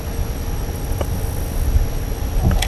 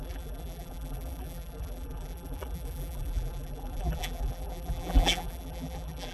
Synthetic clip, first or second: second